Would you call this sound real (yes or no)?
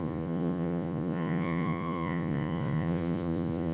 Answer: no